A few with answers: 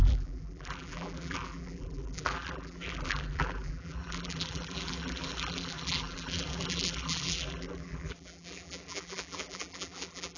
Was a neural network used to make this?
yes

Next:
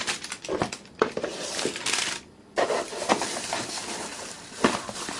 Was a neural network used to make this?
yes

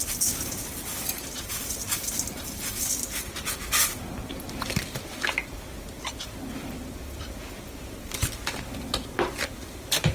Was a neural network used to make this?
no